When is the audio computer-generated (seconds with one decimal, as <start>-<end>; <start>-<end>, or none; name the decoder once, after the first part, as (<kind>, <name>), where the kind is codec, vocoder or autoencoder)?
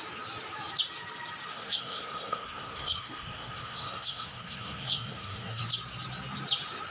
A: 1.5-5.6 (codec, SNAC)